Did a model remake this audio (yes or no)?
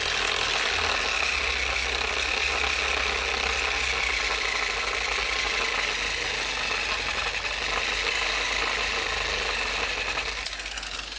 no